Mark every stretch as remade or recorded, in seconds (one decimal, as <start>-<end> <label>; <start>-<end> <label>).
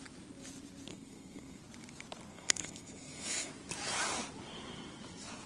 0.0-0.9 recorded; 0.9-1.6 remade; 1.6-2.3 recorded; 2.3-3.5 remade; 3.5-5.5 recorded